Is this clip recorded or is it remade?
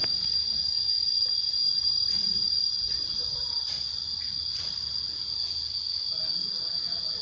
remade